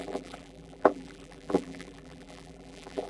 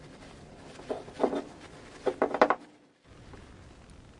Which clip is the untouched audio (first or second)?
second